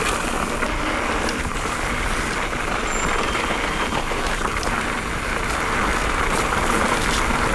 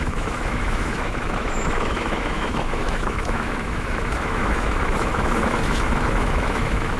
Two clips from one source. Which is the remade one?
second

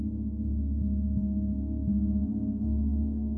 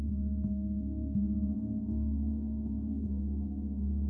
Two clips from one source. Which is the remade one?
second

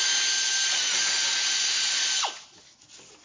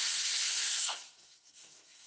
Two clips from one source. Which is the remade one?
second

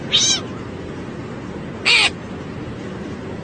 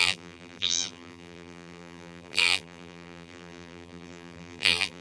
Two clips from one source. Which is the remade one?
second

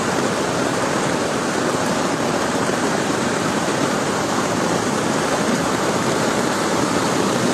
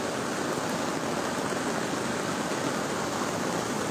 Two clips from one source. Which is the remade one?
first